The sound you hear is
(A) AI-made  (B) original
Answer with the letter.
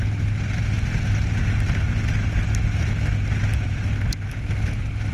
B